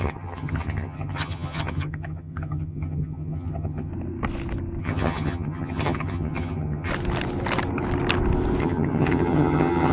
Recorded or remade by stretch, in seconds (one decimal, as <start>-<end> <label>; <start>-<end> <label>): 0.0-3.9 remade; 3.9-4.8 recorded; 4.8-6.9 remade; 6.9-8.6 recorded; 8.6-9.9 remade